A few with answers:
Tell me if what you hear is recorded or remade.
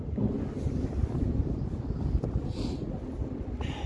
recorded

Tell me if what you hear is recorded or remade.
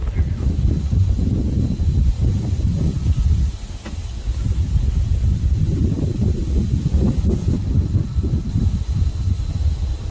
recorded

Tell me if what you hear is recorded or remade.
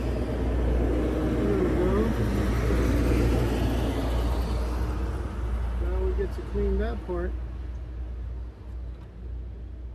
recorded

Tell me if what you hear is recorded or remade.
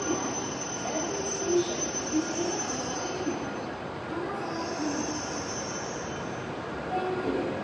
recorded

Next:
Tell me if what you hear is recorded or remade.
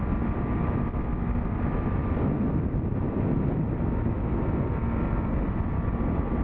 recorded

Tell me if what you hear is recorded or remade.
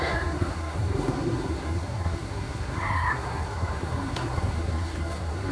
remade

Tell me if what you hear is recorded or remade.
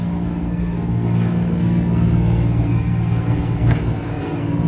remade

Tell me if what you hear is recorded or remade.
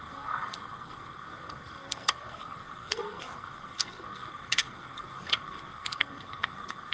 remade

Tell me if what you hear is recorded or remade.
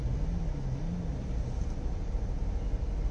recorded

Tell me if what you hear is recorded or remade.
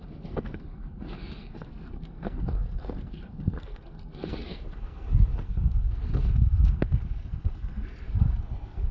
remade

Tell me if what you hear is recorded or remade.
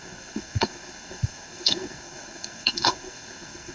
remade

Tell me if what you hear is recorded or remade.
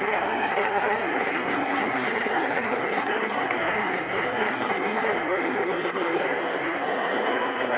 remade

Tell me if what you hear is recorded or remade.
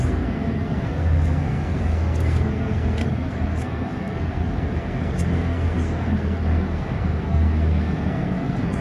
remade